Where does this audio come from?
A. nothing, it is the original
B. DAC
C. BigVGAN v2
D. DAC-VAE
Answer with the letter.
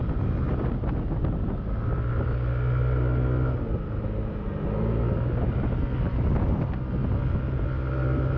A